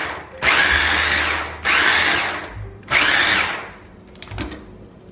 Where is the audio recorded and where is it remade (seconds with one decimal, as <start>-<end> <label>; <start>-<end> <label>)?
0.0-5.1 recorded